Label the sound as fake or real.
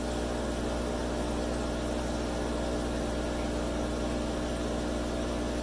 real